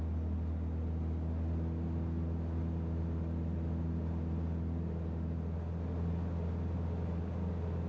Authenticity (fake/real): real